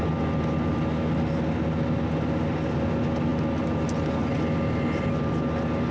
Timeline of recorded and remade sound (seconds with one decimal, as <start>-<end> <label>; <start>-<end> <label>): 0.0-5.9 recorded